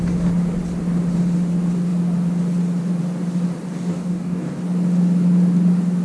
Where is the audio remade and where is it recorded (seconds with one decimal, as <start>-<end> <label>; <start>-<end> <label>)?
0.0-3.9 recorded; 3.9-4.6 remade; 4.6-6.0 recorded